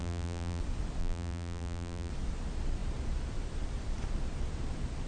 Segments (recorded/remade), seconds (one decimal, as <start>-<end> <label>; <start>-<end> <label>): 0.0-0.6 remade; 0.6-1.0 recorded; 1.0-2.1 remade; 2.1-5.1 recorded